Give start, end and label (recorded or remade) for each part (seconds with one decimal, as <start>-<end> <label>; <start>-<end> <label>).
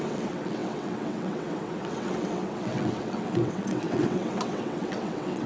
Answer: 0.0-5.5 remade